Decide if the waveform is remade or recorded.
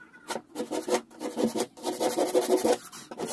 recorded